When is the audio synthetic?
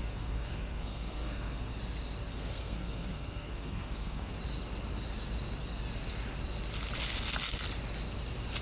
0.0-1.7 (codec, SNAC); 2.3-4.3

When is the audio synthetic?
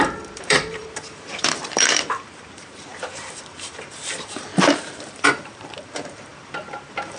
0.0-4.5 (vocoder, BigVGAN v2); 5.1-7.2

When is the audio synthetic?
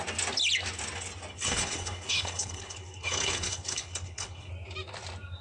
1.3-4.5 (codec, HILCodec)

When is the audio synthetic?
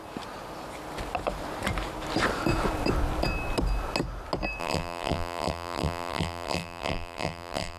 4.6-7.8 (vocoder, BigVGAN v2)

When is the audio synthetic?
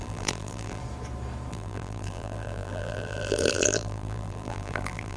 0.0-0.8 (vocoder, BigVGAN v2); 1.5-5.2